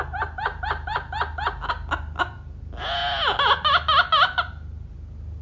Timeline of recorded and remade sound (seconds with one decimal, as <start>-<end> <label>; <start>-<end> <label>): 0.0-5.4 recorded